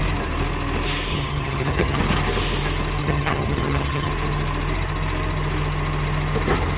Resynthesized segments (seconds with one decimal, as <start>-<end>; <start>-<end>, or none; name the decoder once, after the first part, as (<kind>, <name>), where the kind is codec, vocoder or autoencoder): 1.1-2.0 (vocoder, HiFi-GAN); 3.0-4.1